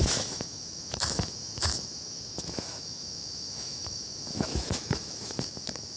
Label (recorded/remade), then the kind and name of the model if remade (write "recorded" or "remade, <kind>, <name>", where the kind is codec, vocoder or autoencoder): remade, autoencoder, DAC-VAE